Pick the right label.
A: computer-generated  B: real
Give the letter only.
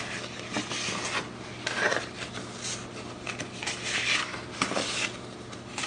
B